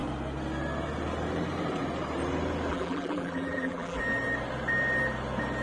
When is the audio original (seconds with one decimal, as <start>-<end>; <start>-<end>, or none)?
0.0-2.7; 4.0-5.6